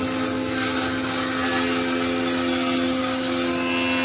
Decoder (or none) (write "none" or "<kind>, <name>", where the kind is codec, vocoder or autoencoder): none